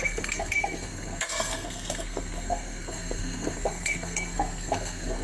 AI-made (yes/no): yes